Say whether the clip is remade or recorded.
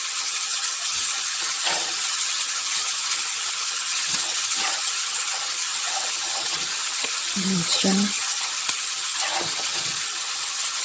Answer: remade